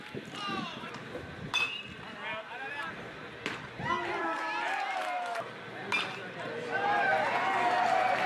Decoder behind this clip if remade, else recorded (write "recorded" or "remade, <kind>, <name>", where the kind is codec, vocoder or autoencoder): recorded